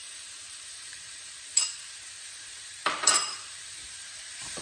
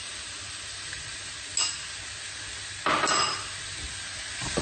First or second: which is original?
second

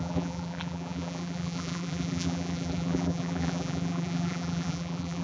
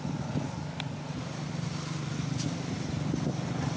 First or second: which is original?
second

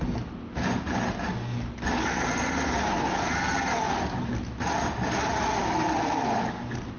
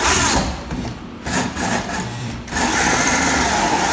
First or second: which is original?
first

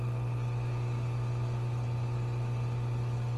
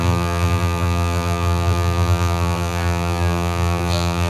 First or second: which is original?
first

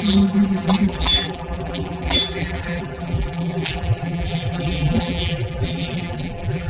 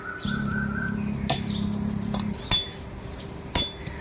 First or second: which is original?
second